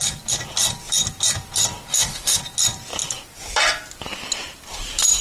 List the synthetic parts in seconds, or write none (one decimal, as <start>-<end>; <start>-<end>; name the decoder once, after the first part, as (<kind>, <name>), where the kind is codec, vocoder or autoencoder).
1.9-2.4 (autoencoder, DAC-VAE)